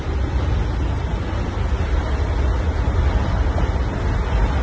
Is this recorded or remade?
recorded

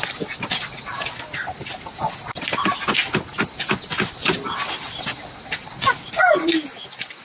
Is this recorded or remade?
recorded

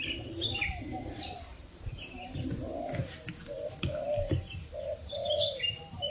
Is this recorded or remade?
recorded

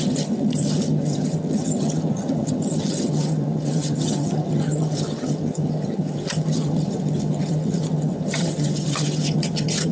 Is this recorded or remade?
remade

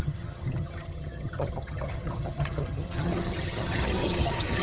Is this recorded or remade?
remade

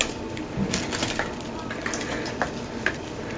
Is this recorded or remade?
recorded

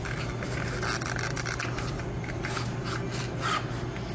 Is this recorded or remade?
recorded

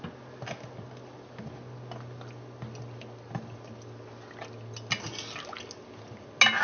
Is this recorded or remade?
recorded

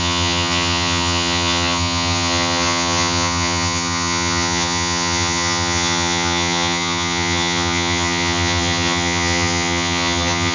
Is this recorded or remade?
remade